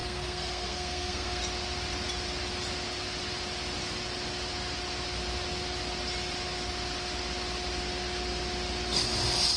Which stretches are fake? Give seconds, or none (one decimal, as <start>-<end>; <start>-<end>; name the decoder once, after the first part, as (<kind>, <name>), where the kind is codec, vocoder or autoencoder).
0.0-1.4 (codec, SNAC)